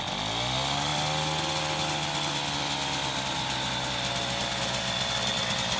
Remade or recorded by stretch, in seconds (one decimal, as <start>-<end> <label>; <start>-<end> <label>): 0.0-5.8 recorded

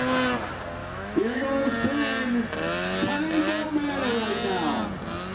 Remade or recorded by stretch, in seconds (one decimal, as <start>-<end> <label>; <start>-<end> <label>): 0.0-0.8 recorded; 0.8-1.4 remade; 1.4-5.3 recorded